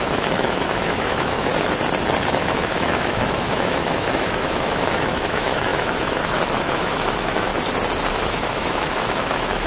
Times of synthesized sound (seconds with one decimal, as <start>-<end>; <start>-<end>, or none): 0.0-1.5; 2.3-7.5; 8.1-9.7